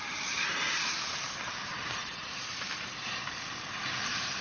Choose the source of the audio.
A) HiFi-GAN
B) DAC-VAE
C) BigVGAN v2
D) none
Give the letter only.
C